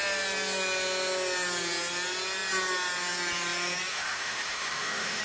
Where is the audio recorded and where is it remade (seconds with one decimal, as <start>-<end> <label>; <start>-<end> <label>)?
0.0-3.9 recorded; 3.9-5.2 remade